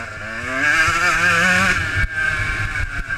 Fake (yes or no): no